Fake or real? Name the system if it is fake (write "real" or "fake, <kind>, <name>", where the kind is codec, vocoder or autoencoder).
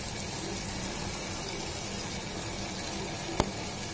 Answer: real